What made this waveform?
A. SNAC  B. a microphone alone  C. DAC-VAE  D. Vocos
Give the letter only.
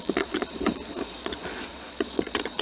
D